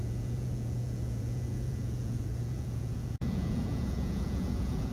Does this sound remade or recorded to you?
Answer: remade